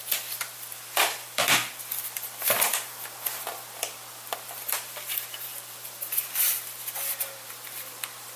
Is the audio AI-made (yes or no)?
yes